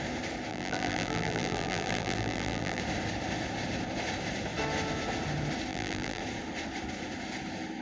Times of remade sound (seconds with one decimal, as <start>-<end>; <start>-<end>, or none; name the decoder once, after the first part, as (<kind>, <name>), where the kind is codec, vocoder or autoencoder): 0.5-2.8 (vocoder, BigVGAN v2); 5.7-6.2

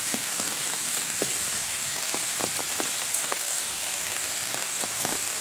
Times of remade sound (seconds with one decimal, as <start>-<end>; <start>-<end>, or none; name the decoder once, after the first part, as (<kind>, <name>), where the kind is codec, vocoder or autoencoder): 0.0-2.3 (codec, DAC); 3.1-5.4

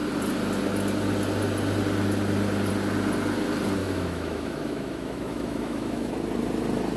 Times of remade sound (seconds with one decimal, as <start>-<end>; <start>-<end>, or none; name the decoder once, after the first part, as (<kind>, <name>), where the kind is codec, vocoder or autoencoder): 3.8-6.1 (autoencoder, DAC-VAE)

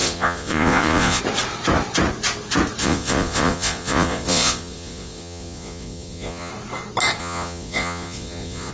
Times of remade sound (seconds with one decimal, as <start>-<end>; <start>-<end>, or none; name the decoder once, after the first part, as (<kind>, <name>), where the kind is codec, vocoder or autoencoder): 0.0-1.2 (vocoder, Vocos); 2.8-6.5; 7.2-8.7

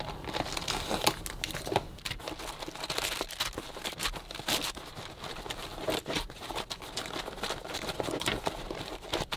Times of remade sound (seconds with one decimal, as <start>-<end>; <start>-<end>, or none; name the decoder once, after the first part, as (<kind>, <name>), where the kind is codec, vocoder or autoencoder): none

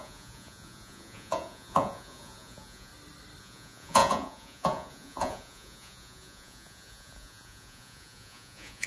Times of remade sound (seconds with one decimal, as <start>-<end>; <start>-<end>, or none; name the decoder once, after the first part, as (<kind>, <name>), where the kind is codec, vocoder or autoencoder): 0.0-2.9 (vocoder, Vocos); 3.4-8.9

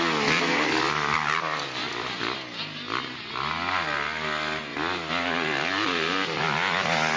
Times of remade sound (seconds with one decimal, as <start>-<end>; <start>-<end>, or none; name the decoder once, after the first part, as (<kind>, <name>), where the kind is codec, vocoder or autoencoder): none

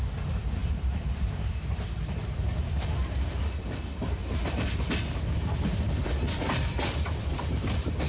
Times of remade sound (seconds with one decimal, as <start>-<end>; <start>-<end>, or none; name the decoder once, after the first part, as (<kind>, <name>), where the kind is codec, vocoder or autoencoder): 0.0-4.2 (vocoder, BigVGAN v2); 5.8-8.1